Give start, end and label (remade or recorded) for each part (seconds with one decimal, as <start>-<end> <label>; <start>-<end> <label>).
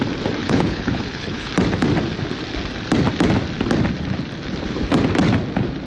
0.0-0.4 recorded; 0.4-1.5 remade; 1.5-5.9 recorded